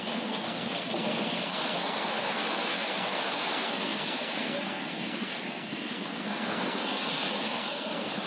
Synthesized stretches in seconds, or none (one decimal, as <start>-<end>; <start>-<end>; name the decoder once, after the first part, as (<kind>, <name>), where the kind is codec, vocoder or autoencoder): 0.0-8.3 (codec, SNAC)